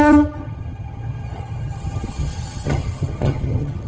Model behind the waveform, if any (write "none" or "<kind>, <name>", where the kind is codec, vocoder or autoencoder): vocoder, HiFi-GAN